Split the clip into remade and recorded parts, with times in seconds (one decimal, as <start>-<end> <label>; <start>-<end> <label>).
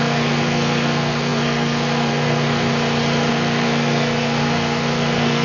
0.0-2.7 remade; 2.7-3.3 recorded; 3.3-5.4 remade